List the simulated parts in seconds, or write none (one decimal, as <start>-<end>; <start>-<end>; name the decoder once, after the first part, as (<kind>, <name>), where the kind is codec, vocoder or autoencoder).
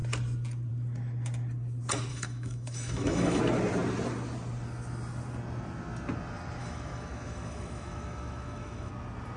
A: 2.1-3.4 (autoencoder, DAC-VAE); 6.6-8.9